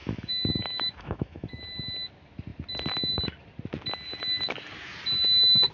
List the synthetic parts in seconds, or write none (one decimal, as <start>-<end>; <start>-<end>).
0.0-1.6